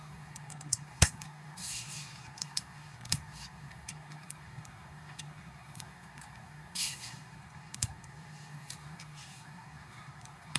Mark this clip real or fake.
fake